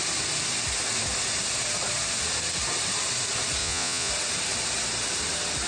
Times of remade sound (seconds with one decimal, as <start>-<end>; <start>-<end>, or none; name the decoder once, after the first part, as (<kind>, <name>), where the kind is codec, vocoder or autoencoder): 3.6-4.1 (vocoder, Vocos)